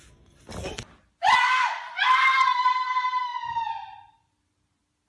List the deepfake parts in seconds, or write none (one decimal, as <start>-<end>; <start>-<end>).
none

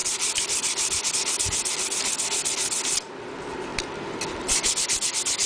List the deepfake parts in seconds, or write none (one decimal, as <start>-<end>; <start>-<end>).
0.0-1.1; 3.7-4.2

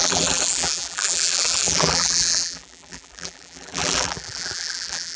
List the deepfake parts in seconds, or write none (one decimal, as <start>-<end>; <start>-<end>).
0.0-5.2

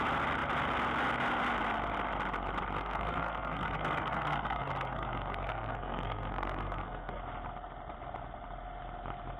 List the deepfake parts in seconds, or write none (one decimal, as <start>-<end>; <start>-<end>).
2.8-7.2

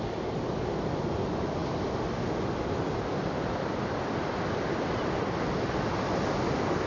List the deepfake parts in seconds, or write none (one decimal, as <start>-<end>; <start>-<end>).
none